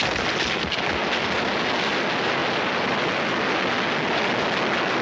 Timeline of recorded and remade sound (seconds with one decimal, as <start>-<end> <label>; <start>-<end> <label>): 0.0-5.0 recorded